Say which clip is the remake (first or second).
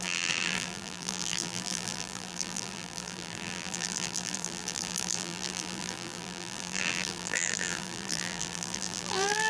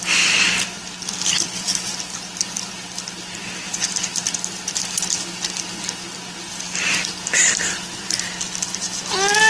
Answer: first